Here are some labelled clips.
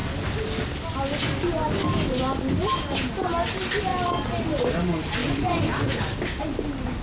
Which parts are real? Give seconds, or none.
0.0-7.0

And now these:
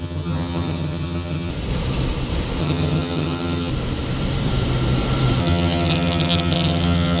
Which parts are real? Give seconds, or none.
1.5-2.6; 3.7-5.4

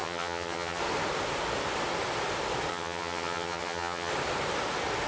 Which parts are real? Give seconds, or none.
0.8-2.7; 4.1-5.1

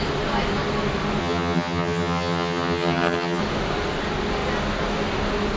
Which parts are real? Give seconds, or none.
0.0-1.2; 3.4-5.6

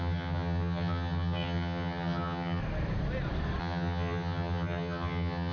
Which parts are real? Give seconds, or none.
2.6-3.6

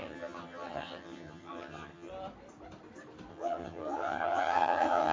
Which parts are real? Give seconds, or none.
2.1-3.3